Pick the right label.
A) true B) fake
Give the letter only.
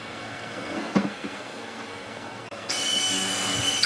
B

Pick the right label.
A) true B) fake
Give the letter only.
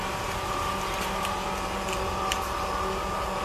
A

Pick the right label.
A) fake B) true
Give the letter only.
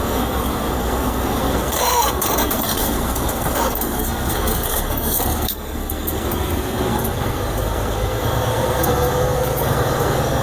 A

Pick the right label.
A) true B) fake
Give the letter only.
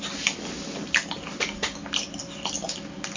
A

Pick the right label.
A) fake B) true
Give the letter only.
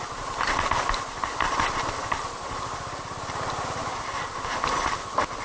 B